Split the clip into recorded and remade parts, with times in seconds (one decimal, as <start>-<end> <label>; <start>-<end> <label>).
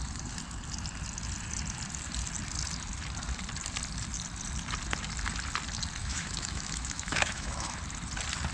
0.0-6.0 recorded; 6.0-7.8 remade; 7.8-8.5 recorded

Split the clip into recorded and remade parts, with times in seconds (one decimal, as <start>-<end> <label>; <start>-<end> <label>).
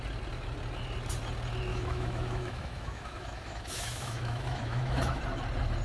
0.0-1.7 recorded; 1.7-5.2 remade; 5.2-5.8 recorded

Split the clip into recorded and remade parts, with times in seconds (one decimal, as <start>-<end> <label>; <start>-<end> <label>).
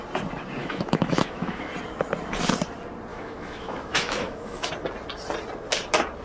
0.0-0.6 recorded; 0.6-1.7 remade; 1.7-3.1 recorded; 3.1-4.7 remade; 4.7-6.2 recorded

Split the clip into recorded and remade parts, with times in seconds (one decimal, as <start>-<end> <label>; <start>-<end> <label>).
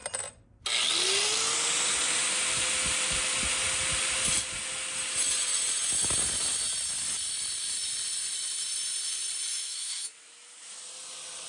0.0-9.5 recorded; 9.5-10.8 remade; 10.8-11.5 recorded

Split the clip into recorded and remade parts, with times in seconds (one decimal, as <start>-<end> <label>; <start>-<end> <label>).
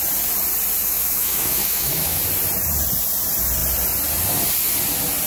0.0-0.8 recorded; 0.8-2.2 remade; 2.2-5.3 recorded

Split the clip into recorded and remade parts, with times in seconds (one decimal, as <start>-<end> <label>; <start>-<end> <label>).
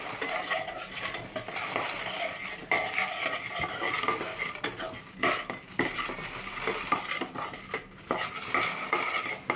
0.0-9.6 recorded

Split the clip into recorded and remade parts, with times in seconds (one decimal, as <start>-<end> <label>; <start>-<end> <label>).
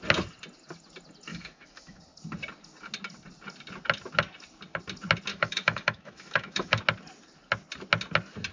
0.0-1.3 recorded; 1.3-2.0 remade; 2.0-5.3 recorded; 5.3-6.8 remade; 6.8-8.5 recorded